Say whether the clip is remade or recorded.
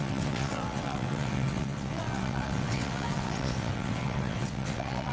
remade